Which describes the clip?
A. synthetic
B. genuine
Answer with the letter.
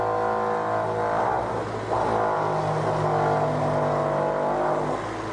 B